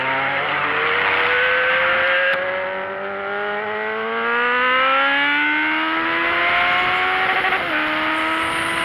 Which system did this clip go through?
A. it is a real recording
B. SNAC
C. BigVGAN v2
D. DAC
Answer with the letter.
A